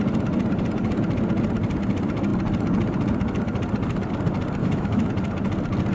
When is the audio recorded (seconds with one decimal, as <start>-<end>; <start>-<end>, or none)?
0.0-4.6; 5.1-5.9